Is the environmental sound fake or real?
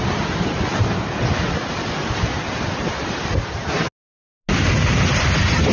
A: real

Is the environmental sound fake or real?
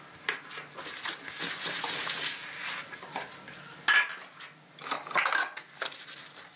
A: real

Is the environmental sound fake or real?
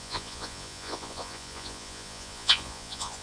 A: fake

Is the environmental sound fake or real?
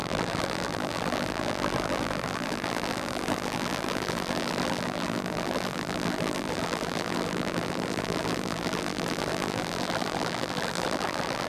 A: fake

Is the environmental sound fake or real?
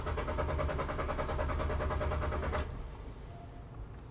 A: real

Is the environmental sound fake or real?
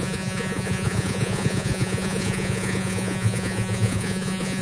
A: fake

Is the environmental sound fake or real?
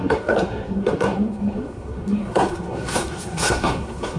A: fake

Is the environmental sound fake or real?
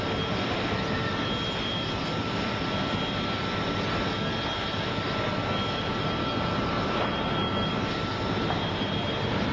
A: real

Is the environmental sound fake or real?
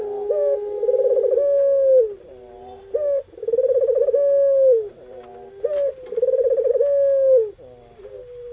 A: real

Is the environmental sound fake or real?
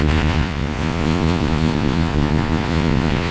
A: fake